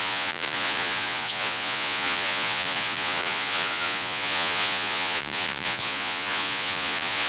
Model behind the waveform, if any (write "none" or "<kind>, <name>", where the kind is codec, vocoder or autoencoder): vocoder, Vocos